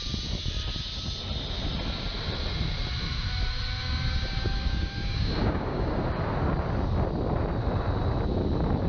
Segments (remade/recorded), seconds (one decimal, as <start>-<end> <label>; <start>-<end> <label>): 0.0-3.8 recorded; 3.8-6.0 remade; 6.0-8.9 recorded